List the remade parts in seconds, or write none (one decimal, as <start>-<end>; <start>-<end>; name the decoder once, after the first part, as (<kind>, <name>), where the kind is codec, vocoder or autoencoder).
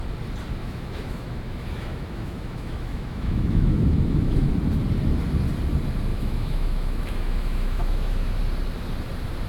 0.6-4.5 (autoencoder, DAC-VAE); 6.1-8.4